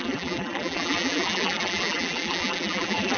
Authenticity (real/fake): fake